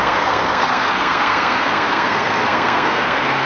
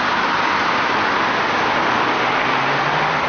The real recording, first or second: second